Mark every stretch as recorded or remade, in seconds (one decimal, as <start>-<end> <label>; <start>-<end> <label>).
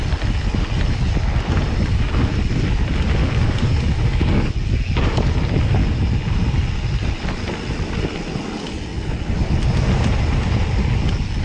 0.0-3.2 recorded; 3.2-4.5 remade; 4.5-11.4 recorded